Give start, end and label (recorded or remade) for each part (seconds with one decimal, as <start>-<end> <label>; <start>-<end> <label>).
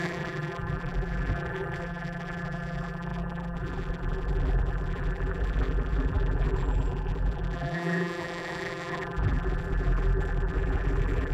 0.0-11.3 remade